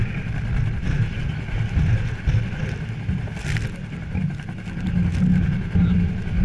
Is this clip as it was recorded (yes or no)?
yes